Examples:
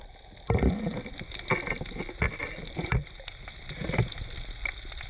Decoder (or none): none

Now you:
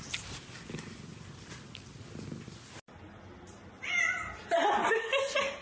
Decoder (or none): none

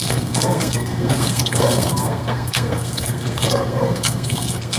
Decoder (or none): codec, SNAC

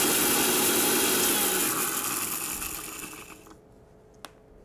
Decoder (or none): none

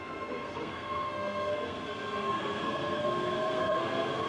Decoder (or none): codec, SNAC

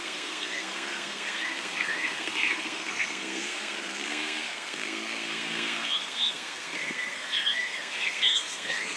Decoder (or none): codec, SNAC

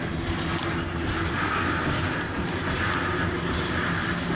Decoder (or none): none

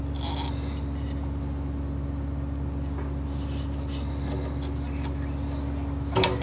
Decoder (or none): none